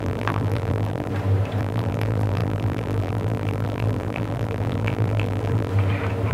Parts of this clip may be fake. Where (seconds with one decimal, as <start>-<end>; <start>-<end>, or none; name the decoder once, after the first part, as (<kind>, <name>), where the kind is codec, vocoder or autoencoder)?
0.0-1.1 (vocoder, BigVGAN v2); 1.6-5.7